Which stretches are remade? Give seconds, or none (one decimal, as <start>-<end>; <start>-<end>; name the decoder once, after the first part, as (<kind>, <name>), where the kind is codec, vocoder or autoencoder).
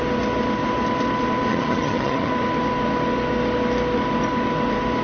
1.5-2.3 (vocoder, HiFi-GAN)